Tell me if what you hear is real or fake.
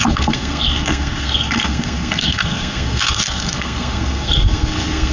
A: fake